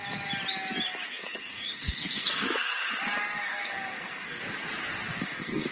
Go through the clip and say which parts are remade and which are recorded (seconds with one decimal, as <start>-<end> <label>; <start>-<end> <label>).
0.0-1.1 recorded; 1.1-2.8 remade; 2.8-3.4 recorded; 3.4-4.4 remade; 4.4-5.2 recorded; 5.2-5.7 remade